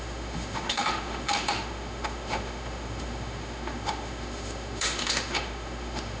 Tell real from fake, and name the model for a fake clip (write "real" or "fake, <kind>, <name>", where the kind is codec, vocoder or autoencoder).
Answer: fake, autoencoder, DAC-VAE